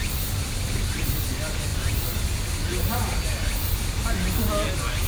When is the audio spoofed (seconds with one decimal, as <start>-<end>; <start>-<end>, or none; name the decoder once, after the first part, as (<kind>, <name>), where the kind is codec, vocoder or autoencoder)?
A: none